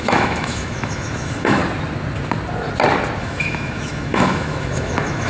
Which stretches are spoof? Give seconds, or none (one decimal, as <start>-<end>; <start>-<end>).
0.0-1.6; 3.2-5.3